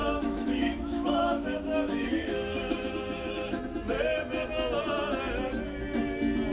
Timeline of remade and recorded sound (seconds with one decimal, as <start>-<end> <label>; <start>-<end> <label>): 0.0-3.6 remade; 3.6-6.5 recorded